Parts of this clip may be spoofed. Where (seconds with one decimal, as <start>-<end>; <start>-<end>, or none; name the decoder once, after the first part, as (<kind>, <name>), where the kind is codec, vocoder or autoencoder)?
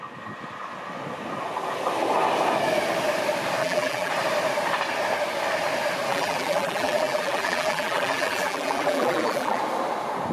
3.6-4.1 (vocoder, BigVGAN v2); 6.1-9.6